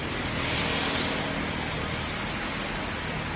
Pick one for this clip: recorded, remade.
recorded